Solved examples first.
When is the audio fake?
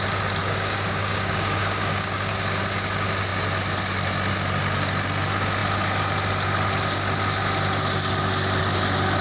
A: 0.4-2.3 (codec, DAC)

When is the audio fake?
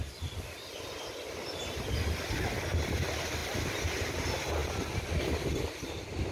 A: none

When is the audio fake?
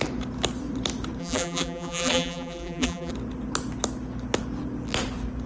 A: 1.2-3.1 (vocoder, BigVGAN v2)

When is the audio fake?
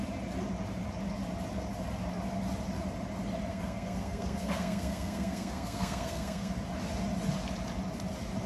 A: 3.5-6.5 (codec, SNAC)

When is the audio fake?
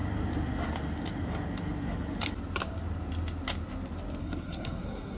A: 4.2-5.2 (codec, SNAC)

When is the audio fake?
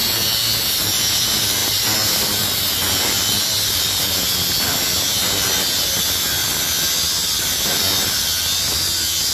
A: 0.6-6.4 (vocoder, BigVGAN v2); 7.0-9.3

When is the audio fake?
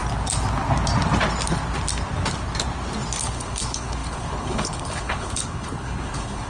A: 3.2-6.5 (codec, HILCodec)